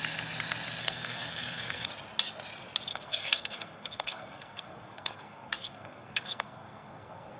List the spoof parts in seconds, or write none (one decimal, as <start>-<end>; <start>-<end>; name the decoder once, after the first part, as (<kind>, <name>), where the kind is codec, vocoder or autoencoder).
0.8-1.9 (codec, SNAC); 2.9-7.4